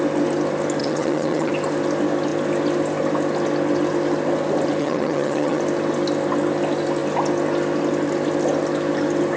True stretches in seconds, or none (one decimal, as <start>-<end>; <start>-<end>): 0.0-0.8; 1.5-4.8; 5.6-9.4